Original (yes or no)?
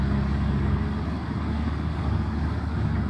no